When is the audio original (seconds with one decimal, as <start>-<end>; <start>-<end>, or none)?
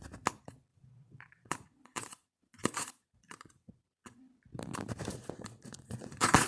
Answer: 0.0-0.7; 4.2-5.1